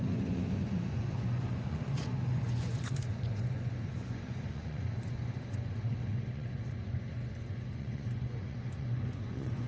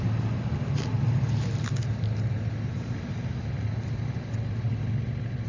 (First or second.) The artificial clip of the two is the first